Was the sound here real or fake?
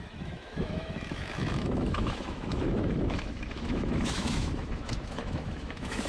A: fake